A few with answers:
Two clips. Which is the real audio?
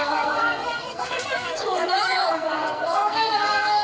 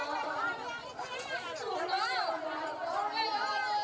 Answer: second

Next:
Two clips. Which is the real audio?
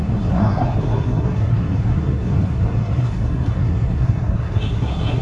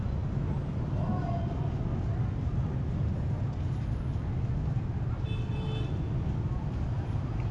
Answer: second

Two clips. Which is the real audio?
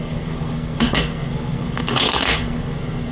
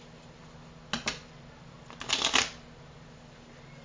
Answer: second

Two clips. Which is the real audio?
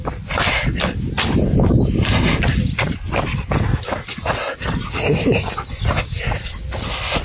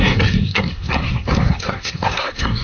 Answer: first